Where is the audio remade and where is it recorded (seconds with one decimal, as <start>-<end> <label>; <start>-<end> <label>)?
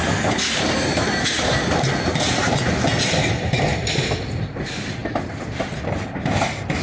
0.0-6.8 recorded